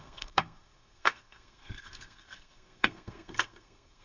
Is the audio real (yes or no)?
no